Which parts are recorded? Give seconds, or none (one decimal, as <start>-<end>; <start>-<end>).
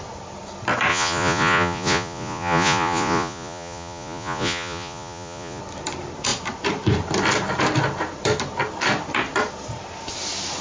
0.0-0.9; 5.6-10.6